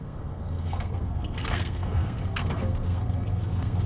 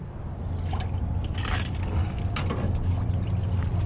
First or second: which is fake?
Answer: first